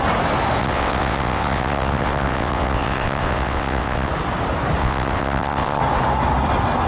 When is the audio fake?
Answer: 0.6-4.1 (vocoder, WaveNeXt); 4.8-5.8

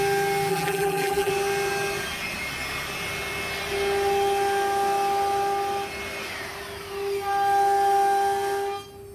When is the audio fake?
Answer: 0.5-1.3 (vocoder, BigVGAN v2)

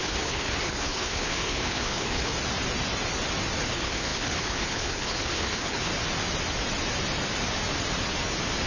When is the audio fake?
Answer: 0.0-2.3 (codec, HILCodec); 3.6-5.9

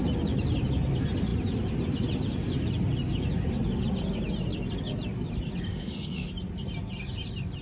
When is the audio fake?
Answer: 5.7-6.3 (autoencoder, DAC-VAE)

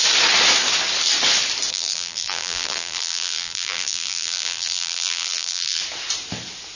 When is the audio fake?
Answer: 1.7-5.8 (vocoder, BigVGAN v2)

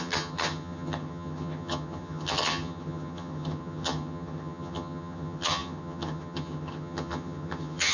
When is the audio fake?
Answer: 0.0-7.9 (vocoder, HiFi-GAN)

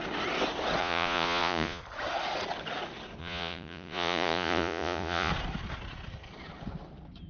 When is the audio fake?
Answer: 0.8-1.8 (vocoder, Vocos); 3.2-5.3